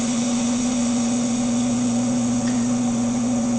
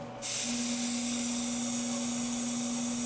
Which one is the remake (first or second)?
first